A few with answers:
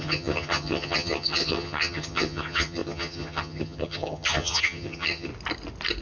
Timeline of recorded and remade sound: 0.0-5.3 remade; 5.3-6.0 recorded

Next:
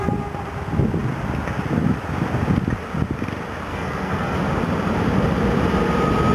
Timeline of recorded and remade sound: 0.0-3.7 recorded; 3.7-4.4 remade; 4.4-6.3 recorded

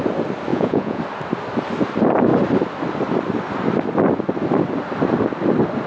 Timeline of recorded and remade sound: 0.0-0.5 recorded; 0.5-1.0 remade; 1.0-5.9 recorded

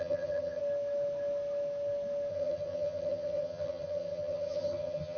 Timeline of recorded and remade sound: 0.0-0.6 remade; 0.6-2.3 recorded; 2.3-5.2 remade

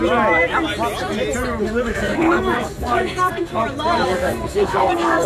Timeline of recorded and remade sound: 0.0-1.6 recorded; 1.6-3.6 remade; 3.6-4.1 recorded; 4.1-5.3 remade